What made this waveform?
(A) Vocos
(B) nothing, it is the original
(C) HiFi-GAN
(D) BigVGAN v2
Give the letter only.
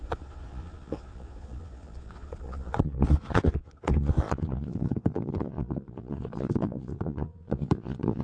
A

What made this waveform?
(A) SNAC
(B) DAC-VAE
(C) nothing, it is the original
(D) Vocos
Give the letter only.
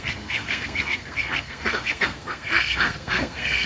A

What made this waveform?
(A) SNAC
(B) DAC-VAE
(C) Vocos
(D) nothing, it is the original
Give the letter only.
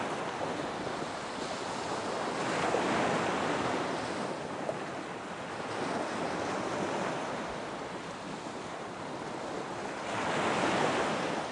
D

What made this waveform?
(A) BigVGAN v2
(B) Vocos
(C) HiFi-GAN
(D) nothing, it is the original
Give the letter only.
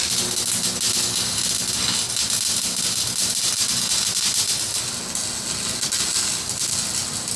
D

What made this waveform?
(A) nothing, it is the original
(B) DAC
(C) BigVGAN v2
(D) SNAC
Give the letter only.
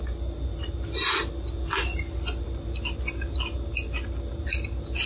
A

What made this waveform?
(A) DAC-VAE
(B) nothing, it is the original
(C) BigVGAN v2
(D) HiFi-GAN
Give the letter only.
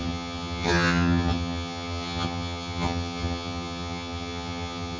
D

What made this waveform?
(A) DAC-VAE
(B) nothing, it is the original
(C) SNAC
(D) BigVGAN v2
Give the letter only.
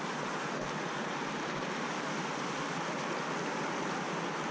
B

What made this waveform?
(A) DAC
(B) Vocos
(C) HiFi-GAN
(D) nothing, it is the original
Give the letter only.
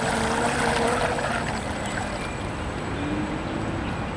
D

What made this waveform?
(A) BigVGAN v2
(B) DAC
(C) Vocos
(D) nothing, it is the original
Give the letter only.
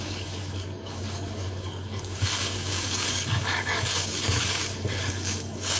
B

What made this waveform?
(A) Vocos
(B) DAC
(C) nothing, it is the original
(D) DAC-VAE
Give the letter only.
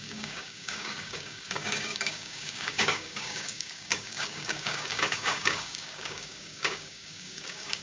B